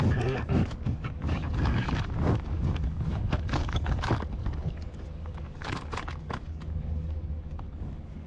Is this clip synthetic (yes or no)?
yes